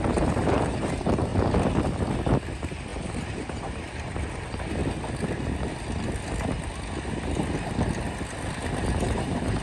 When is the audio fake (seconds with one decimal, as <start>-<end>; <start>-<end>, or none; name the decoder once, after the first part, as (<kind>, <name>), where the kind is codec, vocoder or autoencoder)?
0.0-1.3 (vocoder, BigVGAN v2); 2.5-4.8; 8.9-9.6